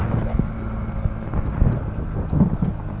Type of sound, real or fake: real